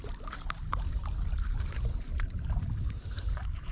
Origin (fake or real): real